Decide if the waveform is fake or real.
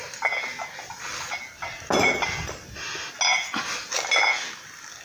real